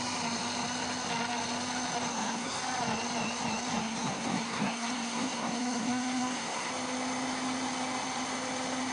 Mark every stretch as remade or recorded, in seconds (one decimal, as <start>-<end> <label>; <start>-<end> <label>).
0.0-2.1 recorded; 2.1-2.6 remade; 2.6-3.8 recorded; 3.8-6.7 remade; 6.7-8.9 recorded

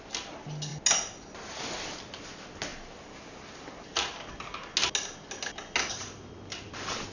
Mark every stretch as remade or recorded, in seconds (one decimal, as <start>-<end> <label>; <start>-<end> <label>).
0.0-7.1 recorded

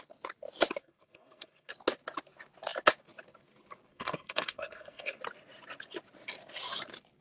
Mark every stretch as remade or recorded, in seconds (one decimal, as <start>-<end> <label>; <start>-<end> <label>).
0.0-0.8 recorded; 0.8-1.7 remade; 1.7-3.9 recorded; 3.9-5.2 remade; 5.2-7.2 recorded

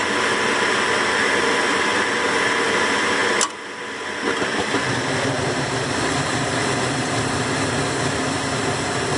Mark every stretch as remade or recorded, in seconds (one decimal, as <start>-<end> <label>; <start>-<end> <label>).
0.0-9.2 recorded

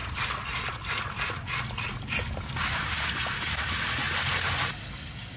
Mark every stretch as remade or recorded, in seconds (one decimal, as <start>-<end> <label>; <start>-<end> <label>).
0.0-5.4 recorded

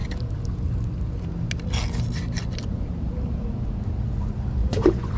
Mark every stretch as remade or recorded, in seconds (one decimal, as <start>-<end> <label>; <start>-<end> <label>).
0.0-4.6 recorded; 4.6-5.2 remade